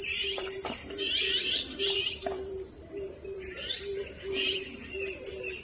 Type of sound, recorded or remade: remade